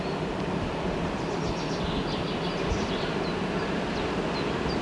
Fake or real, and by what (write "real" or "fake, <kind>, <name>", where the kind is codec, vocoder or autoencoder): real